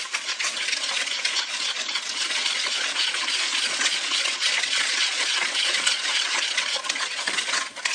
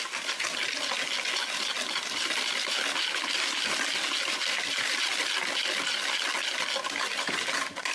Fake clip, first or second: first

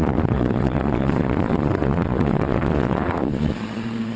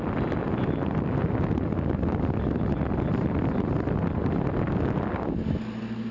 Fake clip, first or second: first